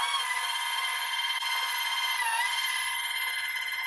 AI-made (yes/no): no